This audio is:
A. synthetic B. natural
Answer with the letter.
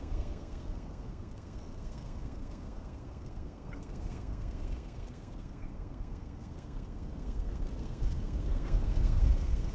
A